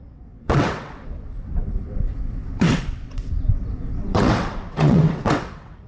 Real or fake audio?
fake